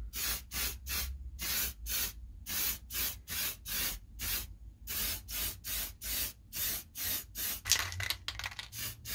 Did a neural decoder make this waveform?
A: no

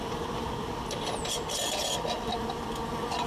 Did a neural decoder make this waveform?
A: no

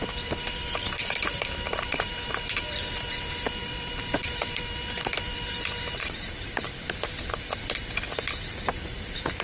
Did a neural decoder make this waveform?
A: yes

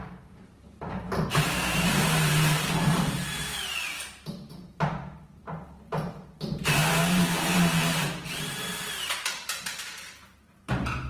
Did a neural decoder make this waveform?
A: yes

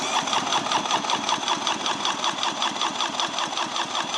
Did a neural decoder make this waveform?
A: no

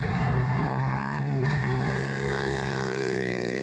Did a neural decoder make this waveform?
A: yes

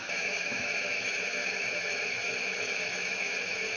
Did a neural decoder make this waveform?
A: yes